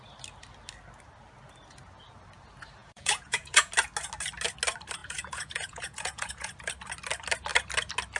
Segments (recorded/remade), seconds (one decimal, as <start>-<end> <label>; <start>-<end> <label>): 0.0-2.8 recorded; 2.8-3.7 remade; 3.7-5.0 recorded; 5.0-6.5 remade; 6.5-8.2 recorded